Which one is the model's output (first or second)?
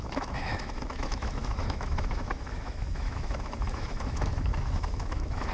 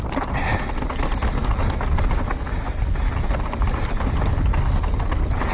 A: first